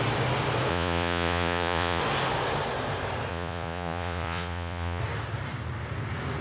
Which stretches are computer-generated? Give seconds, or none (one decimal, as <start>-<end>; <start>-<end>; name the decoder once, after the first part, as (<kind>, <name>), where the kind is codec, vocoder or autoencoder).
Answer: 0.7-2.0 (vocoder, Vocos); 3.3-5.0